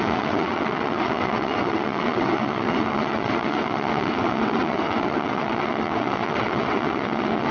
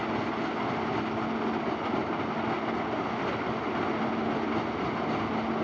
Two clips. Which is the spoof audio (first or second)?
first